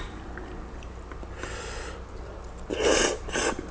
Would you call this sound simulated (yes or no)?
no